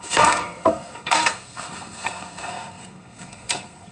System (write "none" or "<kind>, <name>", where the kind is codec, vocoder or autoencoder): codec, SNAC